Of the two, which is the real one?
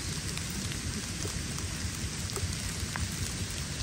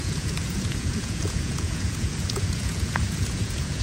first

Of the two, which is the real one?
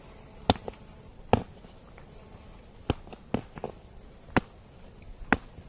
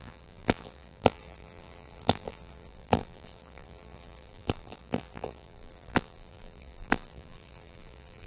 first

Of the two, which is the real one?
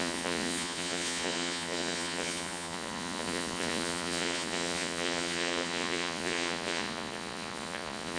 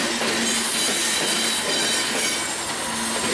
second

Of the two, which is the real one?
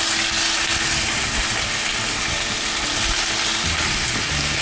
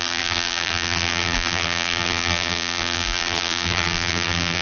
first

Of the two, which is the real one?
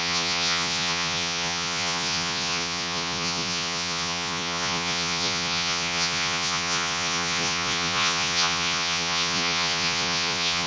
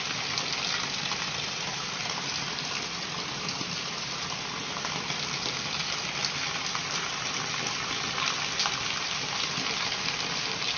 second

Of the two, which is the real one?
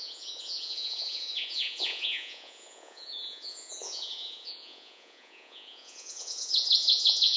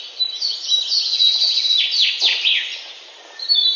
second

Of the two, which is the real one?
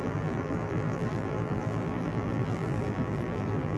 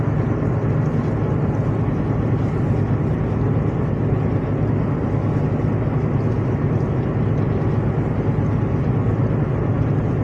second